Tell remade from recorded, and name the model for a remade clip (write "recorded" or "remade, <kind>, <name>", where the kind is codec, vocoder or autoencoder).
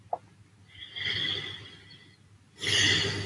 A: recorded